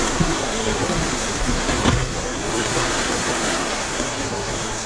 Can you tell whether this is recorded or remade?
remade